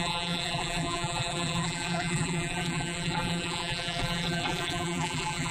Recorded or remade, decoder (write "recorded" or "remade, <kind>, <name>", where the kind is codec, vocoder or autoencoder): remade, vocoder, BigVGAN v2